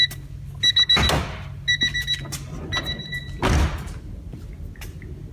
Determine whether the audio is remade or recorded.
recorded